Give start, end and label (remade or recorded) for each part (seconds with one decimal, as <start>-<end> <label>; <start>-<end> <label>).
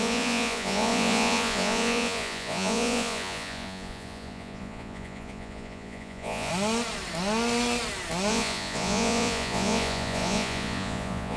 0.0-6.5 remade; 6.5-8.3 recorded; 8.3-11.4 remade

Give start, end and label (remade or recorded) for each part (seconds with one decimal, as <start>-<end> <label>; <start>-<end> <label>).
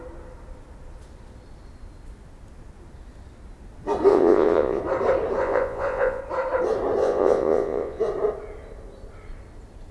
0.0-4.1 recorded; 4.1-4.8 remade; 4.8-5.4 recorded; 5.4-6.2 remade; 6.2-7.0 recorded; 7.0-8.0 remade; 8.0-9.9 recorded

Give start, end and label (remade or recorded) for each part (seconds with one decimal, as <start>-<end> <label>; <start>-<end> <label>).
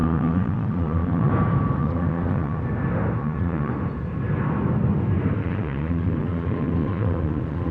0.0-1.3 remade; 1.3-1.8 recorded; 1.8-2.6 remade; 2.6-3.2 recorded; 3.2-3.7 remade; 3.7-5.4 recorded; 5.4-7.7 remade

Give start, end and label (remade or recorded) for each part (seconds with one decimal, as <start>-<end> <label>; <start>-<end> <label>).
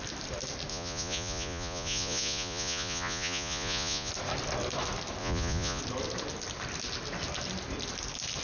0.0-0.7 recorded; 0.7-4.1 remade; 4.1-5.2 recorded; 5.2-5.8 remade; 5.8-8.4 recorded